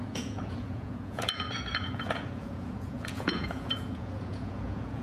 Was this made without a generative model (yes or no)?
no